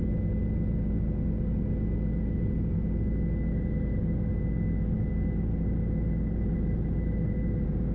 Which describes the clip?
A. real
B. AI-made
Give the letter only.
A